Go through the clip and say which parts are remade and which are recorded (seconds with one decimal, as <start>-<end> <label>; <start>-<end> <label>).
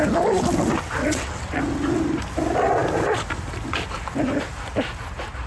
0.0-1.0 recorded; 1.0-1.6 remade; 1.6-5.5 recorded